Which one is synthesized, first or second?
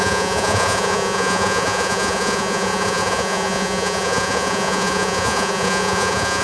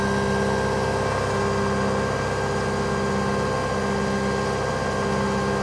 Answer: first